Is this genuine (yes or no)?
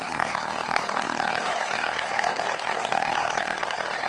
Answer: no